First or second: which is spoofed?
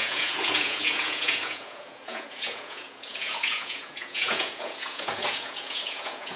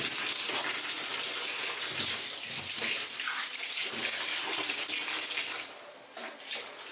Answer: first